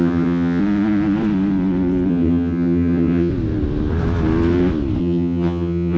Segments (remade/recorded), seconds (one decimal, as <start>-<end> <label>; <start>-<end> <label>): 0.0-0.6 remade; 0.6-2.1 recorded; 2.1-3.3 remade; 3.3-5.0 recorded; 5.0-6.0 remade